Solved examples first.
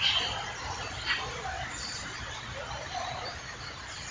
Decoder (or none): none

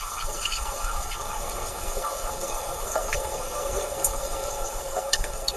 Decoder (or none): codec, SNAC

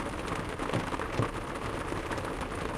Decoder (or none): none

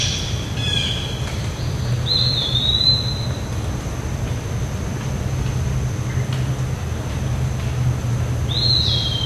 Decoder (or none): none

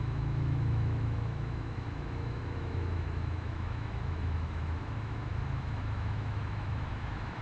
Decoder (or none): autoencoder, DAC-VAE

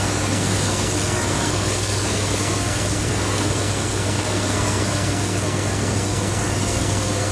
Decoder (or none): codec, SNAC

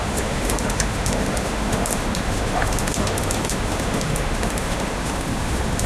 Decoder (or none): autoencoder, DAC-VAE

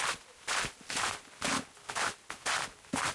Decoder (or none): none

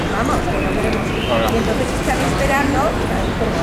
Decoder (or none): none